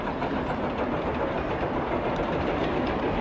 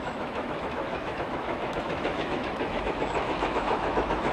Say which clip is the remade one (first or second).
second